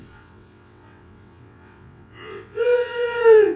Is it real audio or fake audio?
fake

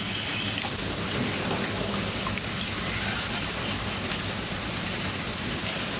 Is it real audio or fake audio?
real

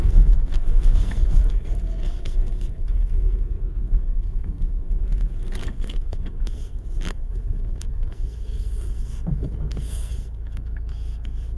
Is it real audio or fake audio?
fake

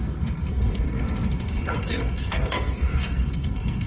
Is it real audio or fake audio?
fake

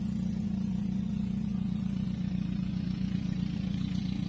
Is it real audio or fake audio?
fake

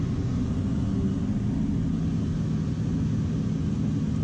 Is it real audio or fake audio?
real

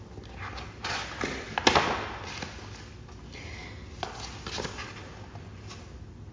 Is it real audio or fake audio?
real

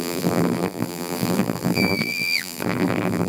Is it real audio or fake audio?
fake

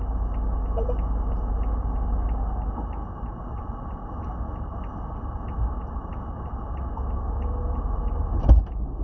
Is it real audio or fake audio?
real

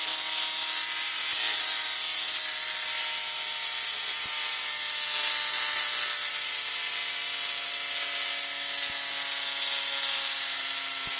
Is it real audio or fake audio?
real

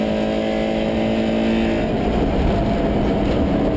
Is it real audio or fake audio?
real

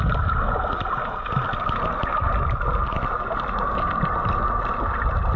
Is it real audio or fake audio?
real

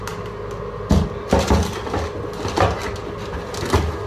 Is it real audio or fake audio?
real